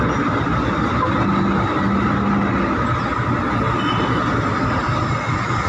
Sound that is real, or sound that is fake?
real